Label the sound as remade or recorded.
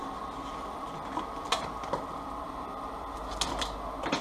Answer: remade